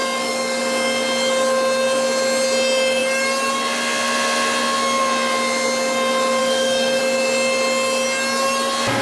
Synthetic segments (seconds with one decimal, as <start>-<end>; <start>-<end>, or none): 0.0-0.6; 6.4-7.0